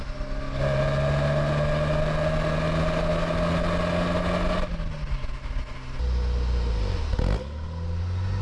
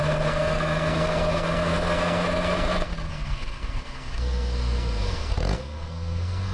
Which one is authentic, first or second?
first